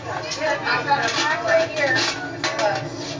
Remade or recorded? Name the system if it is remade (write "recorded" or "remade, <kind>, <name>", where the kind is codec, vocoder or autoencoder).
recorded